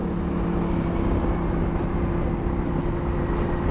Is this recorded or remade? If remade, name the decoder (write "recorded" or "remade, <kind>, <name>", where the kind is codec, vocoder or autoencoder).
recorded